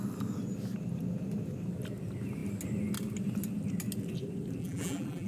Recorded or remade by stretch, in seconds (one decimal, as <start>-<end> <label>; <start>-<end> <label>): 0.0-4.6 recorded; 4.6-5.3 remade